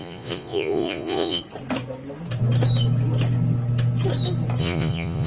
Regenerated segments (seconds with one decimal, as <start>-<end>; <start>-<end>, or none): 0.0-1.4; 4.6-5.3